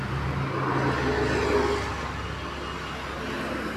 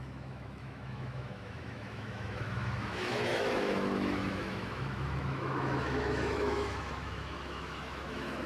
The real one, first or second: first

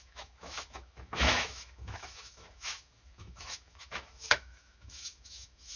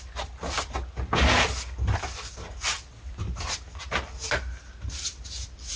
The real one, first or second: second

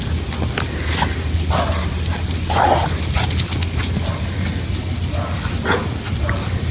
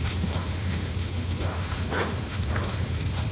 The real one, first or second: first